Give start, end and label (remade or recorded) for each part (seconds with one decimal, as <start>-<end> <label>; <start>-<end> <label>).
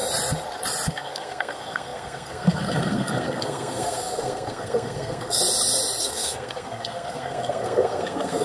0.0-0.9 recorded; 0.9-5.4 remade; 5.4-6.0 recorded; 6.0-8.4 remade